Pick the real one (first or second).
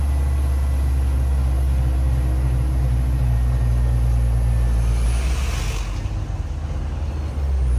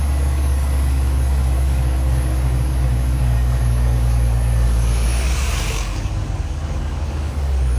first